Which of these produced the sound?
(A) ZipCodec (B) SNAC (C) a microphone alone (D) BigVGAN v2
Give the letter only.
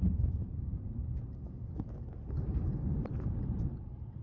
D